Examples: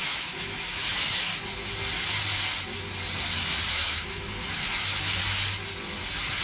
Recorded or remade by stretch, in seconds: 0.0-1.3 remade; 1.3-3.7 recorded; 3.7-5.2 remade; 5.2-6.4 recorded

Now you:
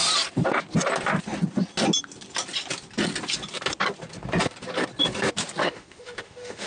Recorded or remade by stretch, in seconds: 0.0-5.6 recorded; 5.6-6.7 remade

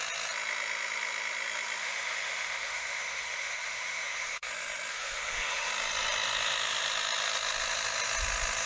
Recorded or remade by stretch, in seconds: 0.0-1.8 recorded; 1.8-4.5 remade; 4.5-4.9 recorded; 4.9-5.7 remade; 5.7-8.7 recorded

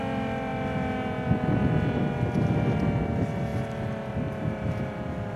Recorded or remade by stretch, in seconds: 0.0-5.4 recorded

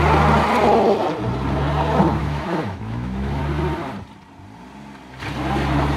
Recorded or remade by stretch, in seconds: 0.0-2.2 recorded; 2.2-3.4 remade; 3.4-6.0 recorded